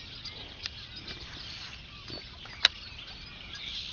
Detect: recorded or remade recorded